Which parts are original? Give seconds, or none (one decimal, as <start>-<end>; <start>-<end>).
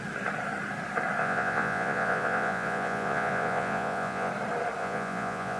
0.0-1.2; 4.3-4.8